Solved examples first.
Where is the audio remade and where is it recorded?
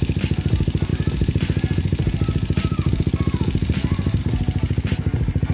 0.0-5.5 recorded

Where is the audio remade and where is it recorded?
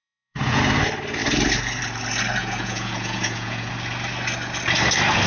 0.0-0.6 remade; 0.6-2.4 recorded; 2.4-3.7 remade; 3.7-5.3 recorded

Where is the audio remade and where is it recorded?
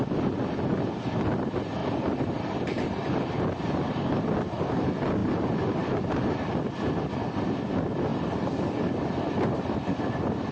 0.0-1.8 recorded; 1.8-4.4 remade; 4.4-10.5 recorded